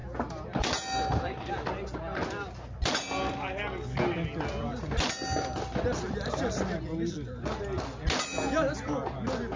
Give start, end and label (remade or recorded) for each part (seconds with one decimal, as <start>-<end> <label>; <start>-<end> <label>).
0.0-9.6 recorded